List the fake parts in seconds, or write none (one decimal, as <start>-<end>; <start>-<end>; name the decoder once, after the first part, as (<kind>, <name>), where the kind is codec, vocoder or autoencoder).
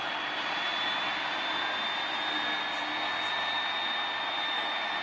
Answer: none